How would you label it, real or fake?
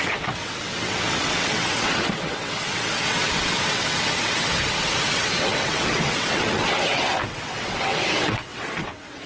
fake